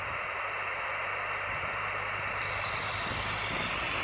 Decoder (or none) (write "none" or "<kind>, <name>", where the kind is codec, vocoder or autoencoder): none